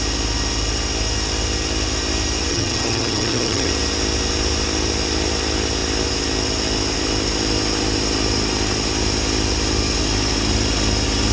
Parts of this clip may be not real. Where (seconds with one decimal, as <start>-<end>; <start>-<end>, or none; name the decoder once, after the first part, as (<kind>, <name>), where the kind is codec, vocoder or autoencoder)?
2.5-3.7 (vocoder, HiFi-GAN)